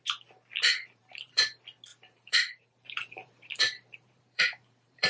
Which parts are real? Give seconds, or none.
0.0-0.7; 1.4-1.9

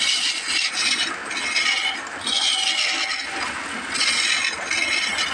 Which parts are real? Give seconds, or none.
0.0-5.3

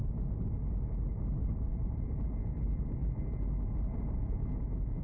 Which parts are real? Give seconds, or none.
0.0-1.4; 2.0-5.0

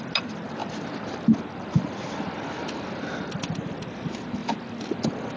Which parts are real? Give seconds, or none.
0.0-5.4

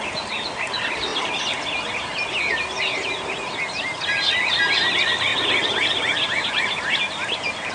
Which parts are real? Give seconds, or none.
0.0-7.7

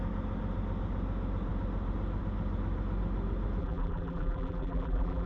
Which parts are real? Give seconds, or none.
0.0-3.6

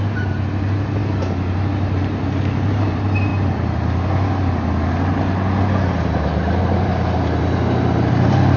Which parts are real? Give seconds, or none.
1.0-2.0; 3.3-6.6